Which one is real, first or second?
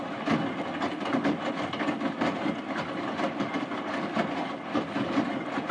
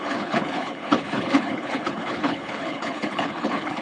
first